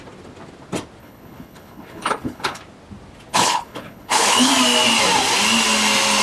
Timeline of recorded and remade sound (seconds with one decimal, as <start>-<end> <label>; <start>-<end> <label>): 0.0-1.0 recorded; 1.0-2.6 remade; 2.6-3.3 recorded; 3.3-4.5 remade; 4.5-6.2 recorded